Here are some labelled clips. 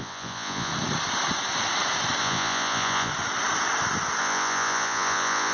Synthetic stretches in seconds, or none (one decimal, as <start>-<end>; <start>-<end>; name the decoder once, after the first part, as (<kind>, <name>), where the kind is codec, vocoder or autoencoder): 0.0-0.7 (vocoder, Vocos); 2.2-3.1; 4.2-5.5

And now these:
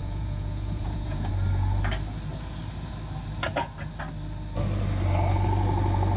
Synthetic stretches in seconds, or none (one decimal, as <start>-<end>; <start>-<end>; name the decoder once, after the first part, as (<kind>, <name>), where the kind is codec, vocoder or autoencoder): 0.0-1.3 (vocoder, Vocos)

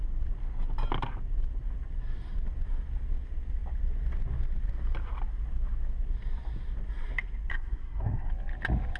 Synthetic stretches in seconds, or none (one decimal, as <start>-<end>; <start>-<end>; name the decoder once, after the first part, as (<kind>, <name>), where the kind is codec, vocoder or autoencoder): 7.5-8.3 (codec, SNAC)

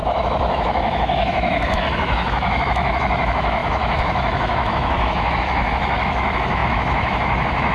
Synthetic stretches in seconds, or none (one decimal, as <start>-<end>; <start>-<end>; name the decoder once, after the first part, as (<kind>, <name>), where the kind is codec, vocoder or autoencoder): 0.0-7.7 (autoencoder, DAC-VAE)

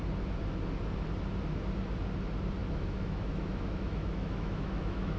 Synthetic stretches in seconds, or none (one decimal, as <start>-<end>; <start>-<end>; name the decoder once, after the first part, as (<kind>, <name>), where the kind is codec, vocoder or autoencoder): 2.6-5.2 (autoencoder, DAC-VAE)

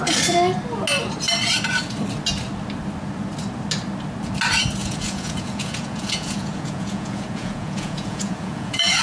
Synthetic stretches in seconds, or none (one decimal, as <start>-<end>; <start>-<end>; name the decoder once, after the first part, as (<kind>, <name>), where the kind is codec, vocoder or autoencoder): 4.8-9.0 (vocoder, Vocos)